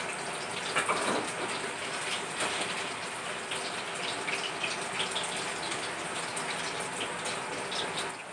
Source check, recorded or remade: recorded